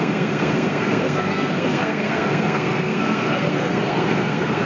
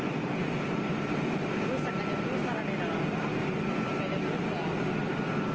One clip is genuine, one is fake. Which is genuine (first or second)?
second